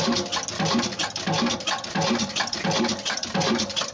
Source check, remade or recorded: recorded